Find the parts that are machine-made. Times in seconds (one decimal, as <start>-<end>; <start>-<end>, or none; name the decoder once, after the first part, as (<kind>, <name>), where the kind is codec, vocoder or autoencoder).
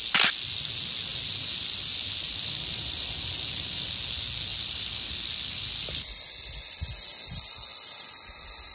1.1-3.9 (vocoder, BigVGAN v2); 4.5-6.8